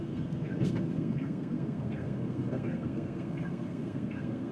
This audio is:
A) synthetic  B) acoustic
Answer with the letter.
A